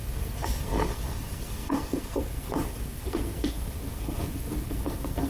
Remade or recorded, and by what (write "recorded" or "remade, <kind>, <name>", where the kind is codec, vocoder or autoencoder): remade, codec, SNAC